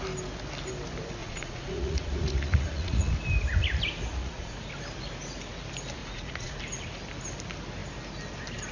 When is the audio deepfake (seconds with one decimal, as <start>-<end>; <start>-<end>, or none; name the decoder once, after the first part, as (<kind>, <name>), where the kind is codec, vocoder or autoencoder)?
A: 1.2-3.1 (vocoder, Vocos); 4.2-4.7; 6.0-6.6